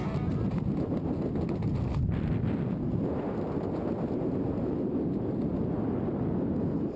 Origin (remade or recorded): recorded